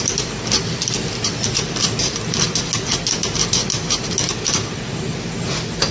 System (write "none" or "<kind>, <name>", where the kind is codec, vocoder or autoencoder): none